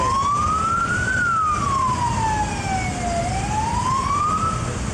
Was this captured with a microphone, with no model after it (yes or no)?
yes